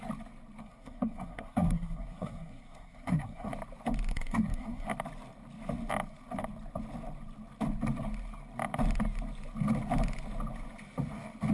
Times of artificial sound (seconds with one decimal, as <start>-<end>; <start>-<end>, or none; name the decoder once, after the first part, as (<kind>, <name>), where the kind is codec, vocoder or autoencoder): 0.6-3.5 (codec, SNAC); 4.1-4.9